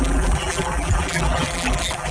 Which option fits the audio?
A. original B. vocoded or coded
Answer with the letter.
B